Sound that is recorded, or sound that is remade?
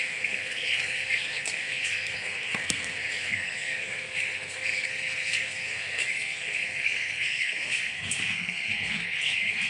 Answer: remade